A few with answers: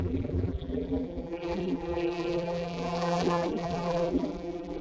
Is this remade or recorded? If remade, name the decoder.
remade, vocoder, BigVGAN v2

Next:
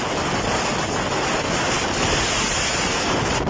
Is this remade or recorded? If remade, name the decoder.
recorded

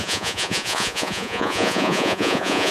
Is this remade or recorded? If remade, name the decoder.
remade, vocoder, Vocos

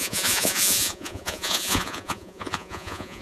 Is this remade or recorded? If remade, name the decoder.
remade, vocoder, Vocos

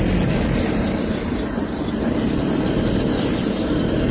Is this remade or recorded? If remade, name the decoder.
recorded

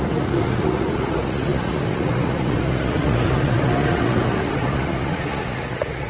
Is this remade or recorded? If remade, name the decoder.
remade, vocoder, Vocos